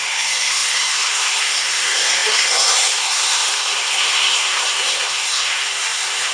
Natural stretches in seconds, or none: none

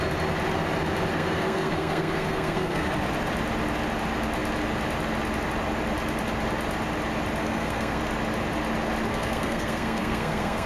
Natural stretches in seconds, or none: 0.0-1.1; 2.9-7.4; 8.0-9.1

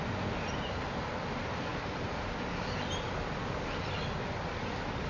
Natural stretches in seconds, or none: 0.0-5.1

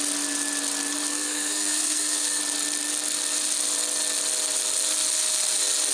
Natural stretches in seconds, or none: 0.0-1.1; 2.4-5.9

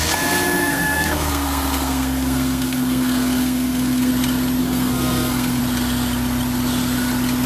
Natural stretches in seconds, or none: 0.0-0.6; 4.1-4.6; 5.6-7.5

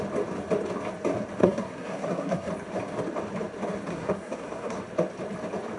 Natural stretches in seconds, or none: 0.0-1.4; 2.5-3.9; 4.8-5.8